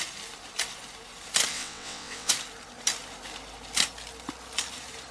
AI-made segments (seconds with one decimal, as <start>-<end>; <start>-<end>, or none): 1.5-2.3